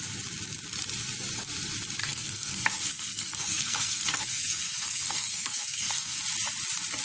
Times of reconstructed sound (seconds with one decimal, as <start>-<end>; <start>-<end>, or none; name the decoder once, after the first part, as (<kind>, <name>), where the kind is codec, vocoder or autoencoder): 2.0-6.2 (codec, SNAC)